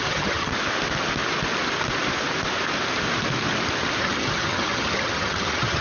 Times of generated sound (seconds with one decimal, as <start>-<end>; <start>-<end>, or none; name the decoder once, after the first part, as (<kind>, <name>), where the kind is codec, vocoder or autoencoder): 0.0-0.5 (vocoder, HiFi-GAN); 4.0-5.8